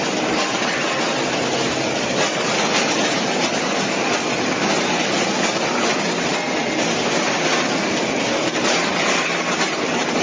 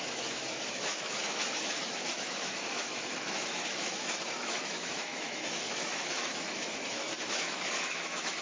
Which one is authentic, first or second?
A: first